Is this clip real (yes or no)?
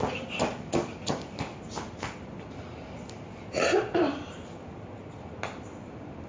yes